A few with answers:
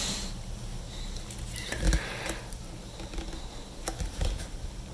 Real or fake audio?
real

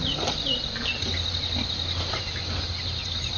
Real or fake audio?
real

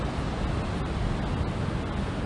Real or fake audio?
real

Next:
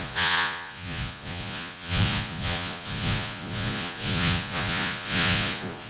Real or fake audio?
fake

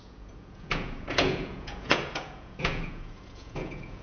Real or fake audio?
fake